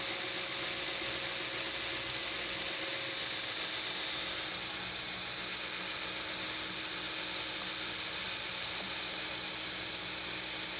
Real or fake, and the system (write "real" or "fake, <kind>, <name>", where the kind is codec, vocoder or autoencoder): real